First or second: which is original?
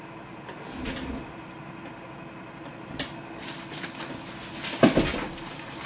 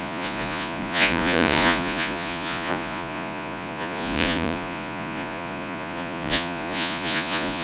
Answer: first